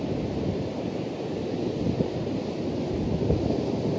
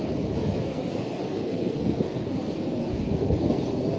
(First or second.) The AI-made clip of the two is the second